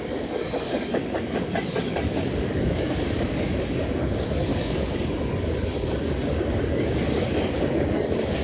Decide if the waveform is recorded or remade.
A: remade